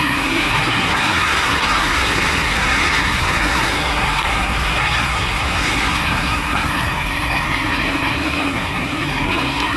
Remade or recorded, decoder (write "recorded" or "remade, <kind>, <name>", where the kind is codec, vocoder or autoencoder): remade, codec, SNAC